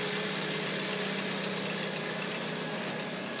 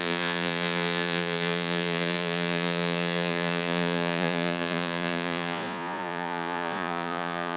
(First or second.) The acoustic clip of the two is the first